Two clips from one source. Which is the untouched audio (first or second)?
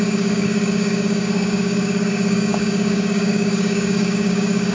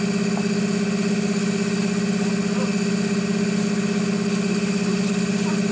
second